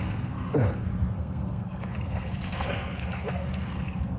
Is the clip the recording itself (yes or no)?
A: no